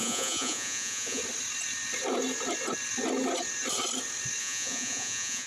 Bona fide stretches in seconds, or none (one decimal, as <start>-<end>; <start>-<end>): 1.2-4.4